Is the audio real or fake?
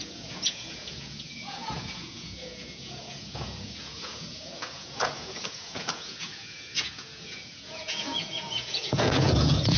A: fake